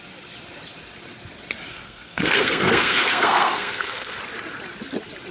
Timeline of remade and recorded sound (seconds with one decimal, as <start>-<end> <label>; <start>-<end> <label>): 0.0-1.7 recorded; 1.7-4.2 remade; 4.2-5.3 recorded